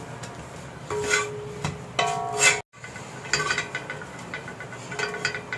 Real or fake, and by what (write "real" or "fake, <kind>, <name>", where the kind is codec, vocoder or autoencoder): real